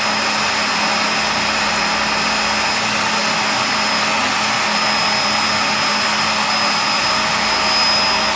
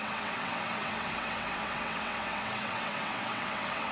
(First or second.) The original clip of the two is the first